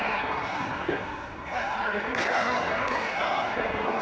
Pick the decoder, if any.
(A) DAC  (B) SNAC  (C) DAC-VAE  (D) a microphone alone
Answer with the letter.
B